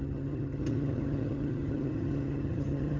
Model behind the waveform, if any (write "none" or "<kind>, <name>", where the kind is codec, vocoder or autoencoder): vocoder, HiFi-GAN